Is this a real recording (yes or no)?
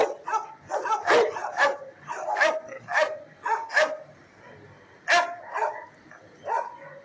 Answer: yes